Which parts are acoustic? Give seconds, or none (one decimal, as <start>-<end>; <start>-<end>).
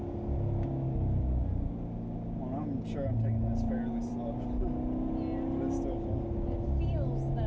0.0-7.5